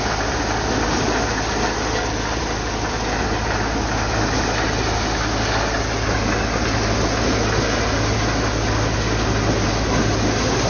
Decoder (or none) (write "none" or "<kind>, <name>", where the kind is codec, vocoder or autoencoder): none